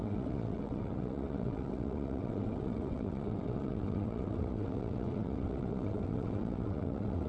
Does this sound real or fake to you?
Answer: fake